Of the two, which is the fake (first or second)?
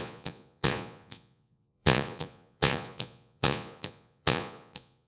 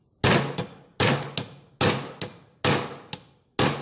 first